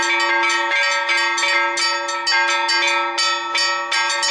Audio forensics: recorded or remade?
recorded